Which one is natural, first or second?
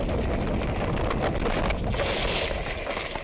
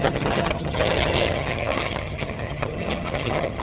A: first